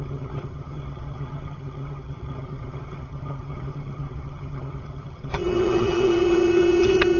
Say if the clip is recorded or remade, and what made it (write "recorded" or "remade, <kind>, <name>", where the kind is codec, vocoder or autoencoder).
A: remade, vocoder, HiFi-GAN